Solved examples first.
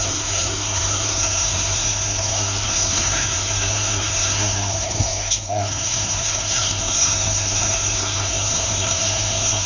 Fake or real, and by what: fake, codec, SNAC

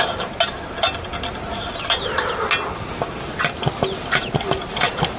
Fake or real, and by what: real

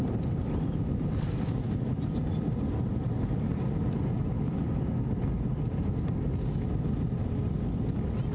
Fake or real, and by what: real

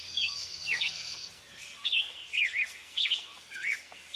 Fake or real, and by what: fake, codec, SNAC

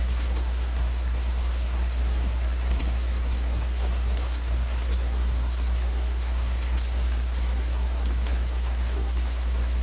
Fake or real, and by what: fake, codec, SNAC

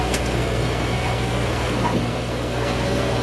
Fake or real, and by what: fake, codec, SNAC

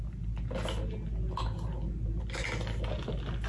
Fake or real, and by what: real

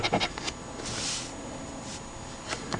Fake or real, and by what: real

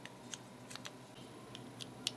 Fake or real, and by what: real